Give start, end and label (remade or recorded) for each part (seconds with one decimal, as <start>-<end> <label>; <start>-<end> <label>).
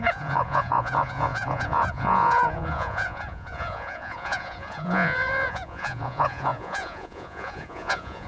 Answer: 0.0-8.3 remade